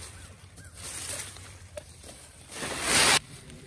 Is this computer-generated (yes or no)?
no